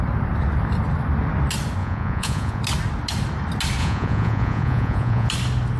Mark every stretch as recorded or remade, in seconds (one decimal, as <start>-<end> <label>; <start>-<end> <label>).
0.0-1.8 recorded; 1.8-2.6 remade; 2.6-3.8 recorded; 3.8-5.3 remade; 5.3-5.8 recorded